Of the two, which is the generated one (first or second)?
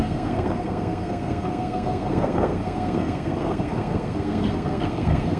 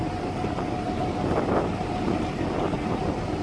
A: first